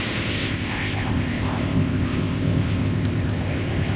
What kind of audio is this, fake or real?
fake